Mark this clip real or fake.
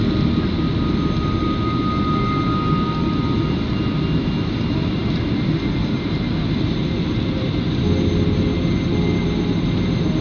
real